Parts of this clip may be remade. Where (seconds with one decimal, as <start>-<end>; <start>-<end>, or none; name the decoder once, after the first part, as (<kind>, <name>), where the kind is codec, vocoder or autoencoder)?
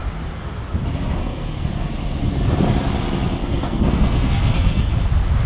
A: 1.2-1.9 (codec, SNAC); 3.4-4.9